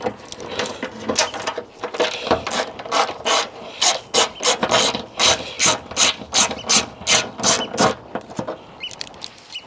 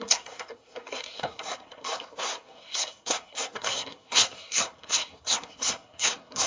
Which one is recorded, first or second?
first